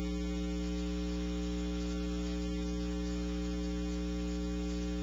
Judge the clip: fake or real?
real